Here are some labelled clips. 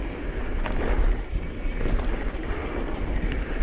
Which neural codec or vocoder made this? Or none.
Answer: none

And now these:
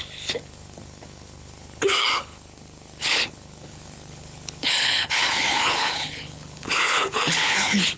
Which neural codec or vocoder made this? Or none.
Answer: codec, HILCodec